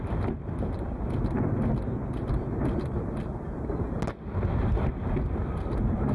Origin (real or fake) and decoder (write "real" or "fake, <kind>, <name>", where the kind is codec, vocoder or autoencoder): real